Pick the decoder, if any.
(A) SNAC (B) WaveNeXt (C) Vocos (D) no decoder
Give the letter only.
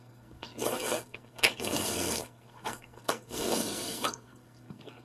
A